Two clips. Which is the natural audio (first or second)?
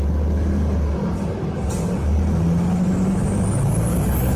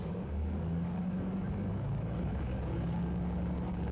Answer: first